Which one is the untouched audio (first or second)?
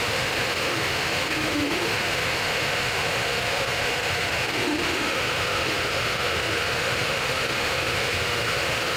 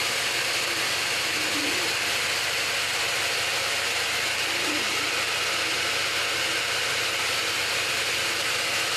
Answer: second